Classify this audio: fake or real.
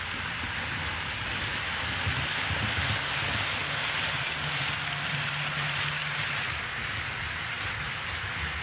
real